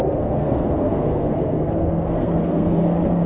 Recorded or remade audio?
remade